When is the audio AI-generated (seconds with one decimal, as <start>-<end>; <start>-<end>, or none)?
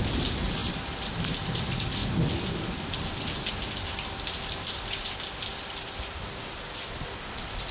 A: none